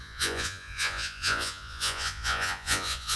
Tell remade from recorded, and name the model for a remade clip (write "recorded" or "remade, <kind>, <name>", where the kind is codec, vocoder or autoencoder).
remade, vocoder, Vocos